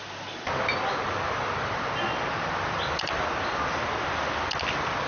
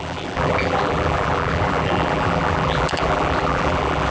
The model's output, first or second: second